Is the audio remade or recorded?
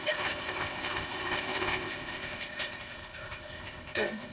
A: remade